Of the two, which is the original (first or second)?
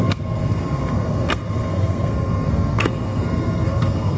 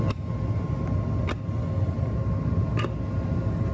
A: second